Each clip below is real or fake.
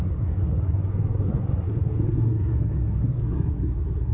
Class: fake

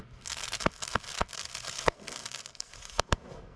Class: fake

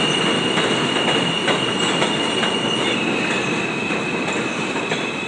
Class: real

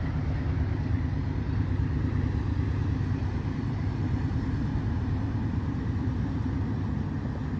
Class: fake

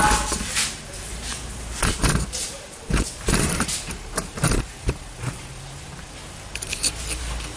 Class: fake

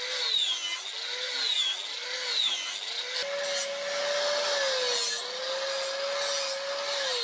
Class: real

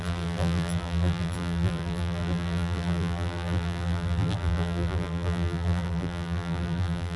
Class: fake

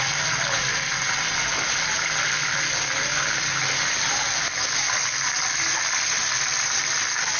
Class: real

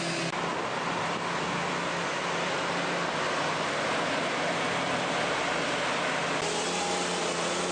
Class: real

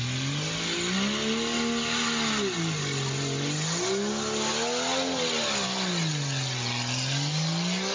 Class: real